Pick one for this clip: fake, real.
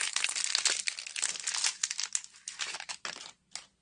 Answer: real